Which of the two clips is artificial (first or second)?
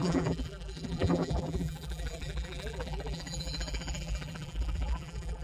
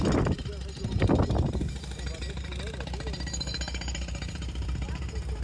first